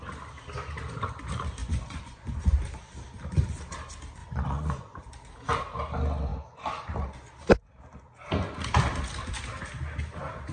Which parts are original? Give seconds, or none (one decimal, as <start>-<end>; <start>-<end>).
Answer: 0.0-1.6; 2.4-4.2; 5.0-10.5

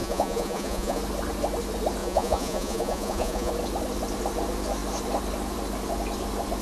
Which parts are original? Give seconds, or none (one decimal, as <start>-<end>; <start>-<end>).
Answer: 1.0-2.0; 3.5-6.6